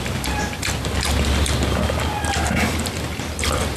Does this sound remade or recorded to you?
recorded